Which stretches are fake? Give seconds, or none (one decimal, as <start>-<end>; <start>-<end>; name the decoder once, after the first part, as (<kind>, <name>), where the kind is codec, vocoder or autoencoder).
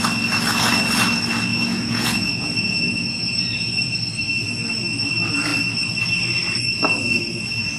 1.5-4.0 (vocoder, Vocos)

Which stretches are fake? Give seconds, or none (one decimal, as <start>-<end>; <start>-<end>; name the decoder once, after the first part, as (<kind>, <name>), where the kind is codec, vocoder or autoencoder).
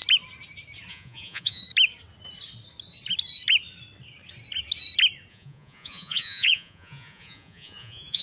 0.9-1.6 (vocoder, Vocos); 5.3-8.2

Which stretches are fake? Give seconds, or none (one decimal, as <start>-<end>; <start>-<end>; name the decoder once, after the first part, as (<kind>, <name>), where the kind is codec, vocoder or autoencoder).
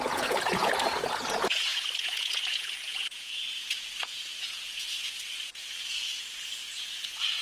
0.0-7.4 (vocoder, Vocos)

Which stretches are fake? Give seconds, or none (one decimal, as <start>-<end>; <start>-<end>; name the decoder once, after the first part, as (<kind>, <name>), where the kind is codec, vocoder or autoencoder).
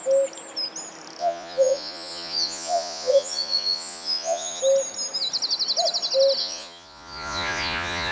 1.2-4.6 (vocoder, Vocos); 6.4-8.1